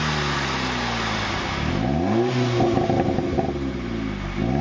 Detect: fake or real real